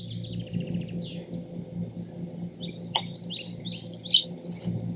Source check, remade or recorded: recorded